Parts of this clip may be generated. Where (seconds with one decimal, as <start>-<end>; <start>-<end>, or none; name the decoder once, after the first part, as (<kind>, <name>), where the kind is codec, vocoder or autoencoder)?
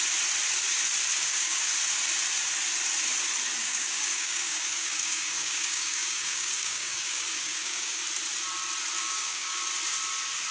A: 1.1-1.7 (codec, DAC); 3.6-8.0; 9.0-9.6